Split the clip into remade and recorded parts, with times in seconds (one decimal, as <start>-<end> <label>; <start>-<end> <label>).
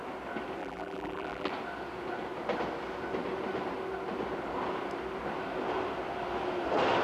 0.0-0.6 recorded; 0.6-1.5 remade; 1.5-7.0 recorded